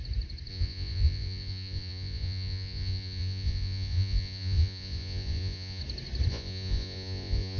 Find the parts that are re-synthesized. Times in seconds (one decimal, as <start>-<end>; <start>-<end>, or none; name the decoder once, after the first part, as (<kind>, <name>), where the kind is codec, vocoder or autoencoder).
0.5-5.8 (vocoder, Vocos); 6.3-7.6